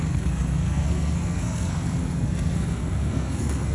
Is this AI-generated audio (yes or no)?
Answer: yes